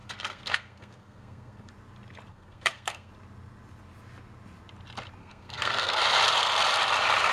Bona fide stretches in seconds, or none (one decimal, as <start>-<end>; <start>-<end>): 1.7-2.3; 3.1-5.2; 6.0-7.3

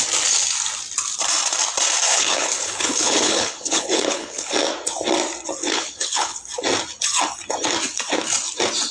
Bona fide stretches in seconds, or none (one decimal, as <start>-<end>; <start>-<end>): 0.0-2.1; 4.5-5.6; 6.4-8.9

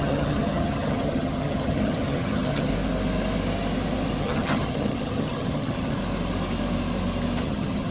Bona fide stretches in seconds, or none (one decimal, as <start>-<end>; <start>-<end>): 2.7-4.2; 6.0-7.4

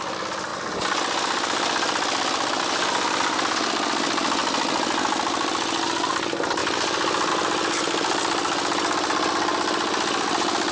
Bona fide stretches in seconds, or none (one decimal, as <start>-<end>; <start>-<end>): 0.0-10.7

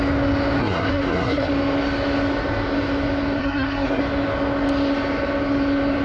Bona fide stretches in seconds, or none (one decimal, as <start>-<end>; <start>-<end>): 0.0-0.6; 1.5-3.4; 4.0-6.0